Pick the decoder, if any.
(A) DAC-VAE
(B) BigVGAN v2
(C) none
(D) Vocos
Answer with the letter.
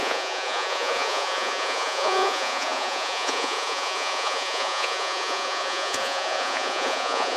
D